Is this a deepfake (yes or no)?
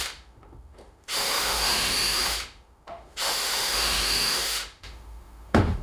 yes